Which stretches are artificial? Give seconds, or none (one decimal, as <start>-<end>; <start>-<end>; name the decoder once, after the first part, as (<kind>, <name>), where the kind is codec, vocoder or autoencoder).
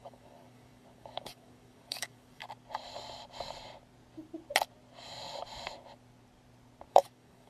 0.0-2.4 (codec, DAC); 6.9-7.5